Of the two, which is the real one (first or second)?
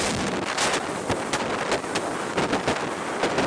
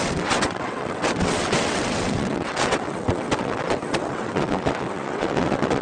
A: first